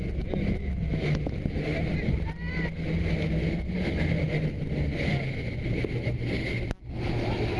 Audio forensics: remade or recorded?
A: recorded